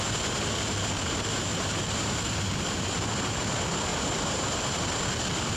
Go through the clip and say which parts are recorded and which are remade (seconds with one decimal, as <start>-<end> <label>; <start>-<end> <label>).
0.0-1.5 recorded; 1.5-3.1 remade; 3.1-3.9 recorded; 3.9-4.6 remade; 4.6-5.6 recorded